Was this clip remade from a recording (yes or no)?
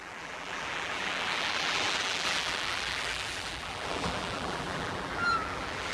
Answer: yes